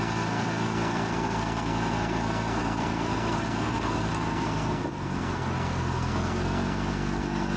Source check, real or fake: fake